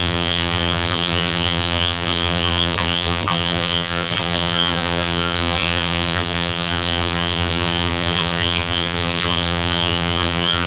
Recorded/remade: remade